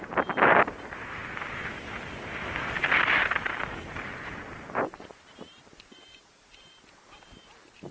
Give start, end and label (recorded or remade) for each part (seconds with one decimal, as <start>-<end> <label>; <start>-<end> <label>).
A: 0.0-3.2 recorded; 3.2-7.9 remade